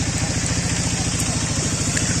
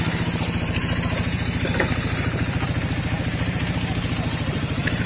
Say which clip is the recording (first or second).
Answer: first